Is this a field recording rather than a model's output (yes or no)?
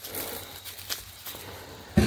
yes